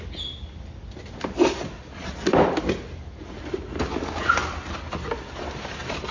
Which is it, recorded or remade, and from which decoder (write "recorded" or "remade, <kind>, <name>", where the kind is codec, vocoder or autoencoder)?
recorded